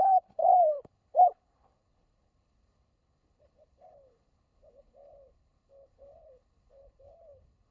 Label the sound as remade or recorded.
remade